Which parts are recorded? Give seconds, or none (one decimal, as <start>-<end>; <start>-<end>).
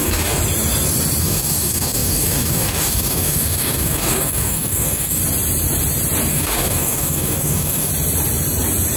0.4-1.2; 5.2-6.3; 7.9-9.0